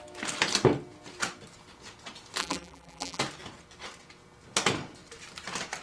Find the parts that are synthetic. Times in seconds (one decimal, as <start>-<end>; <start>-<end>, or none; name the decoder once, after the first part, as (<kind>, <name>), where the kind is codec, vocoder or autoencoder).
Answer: 2.4-3.2 (vocoder, BigVGAN v2)